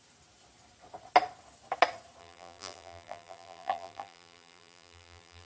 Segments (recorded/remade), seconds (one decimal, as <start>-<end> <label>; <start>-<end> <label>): 0.0-2.2 recorded; 2.2-5.5 remade